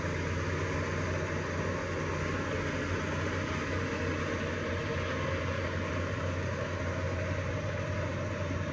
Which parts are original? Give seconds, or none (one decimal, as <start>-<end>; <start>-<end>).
0.0-8.7